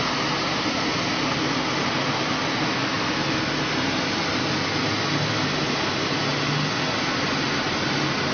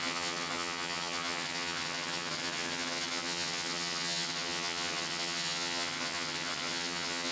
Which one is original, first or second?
first